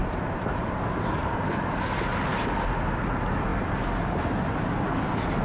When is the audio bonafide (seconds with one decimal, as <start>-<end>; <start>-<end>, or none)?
1.5-5.4